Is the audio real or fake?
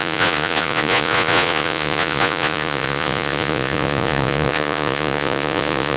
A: fake